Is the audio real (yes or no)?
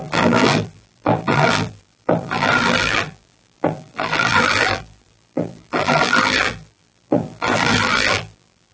no